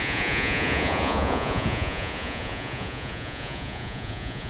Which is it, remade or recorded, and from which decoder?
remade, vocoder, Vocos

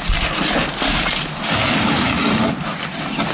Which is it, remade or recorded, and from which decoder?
recorded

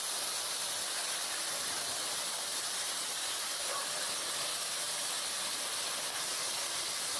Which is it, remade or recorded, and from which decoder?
recorded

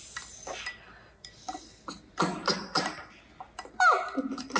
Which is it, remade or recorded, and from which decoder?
recorded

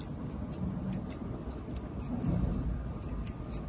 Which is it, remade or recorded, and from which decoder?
recorded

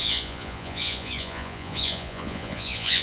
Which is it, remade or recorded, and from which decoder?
remade, vocoder, Vocos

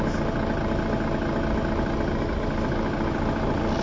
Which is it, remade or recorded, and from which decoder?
recorded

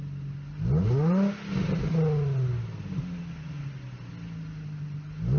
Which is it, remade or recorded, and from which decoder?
recorded